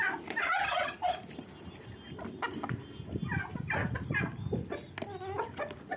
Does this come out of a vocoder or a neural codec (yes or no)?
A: no